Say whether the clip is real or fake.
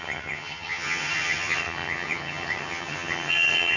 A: fake